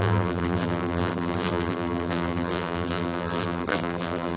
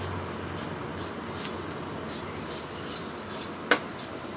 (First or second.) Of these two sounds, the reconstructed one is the first